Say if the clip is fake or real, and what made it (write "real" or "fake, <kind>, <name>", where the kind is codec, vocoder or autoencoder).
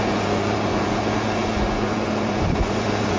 fake, vocoder, Vocos